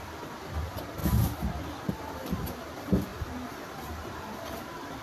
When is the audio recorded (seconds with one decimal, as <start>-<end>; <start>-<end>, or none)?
1.0-1.9